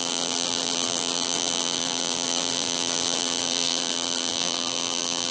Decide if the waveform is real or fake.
fake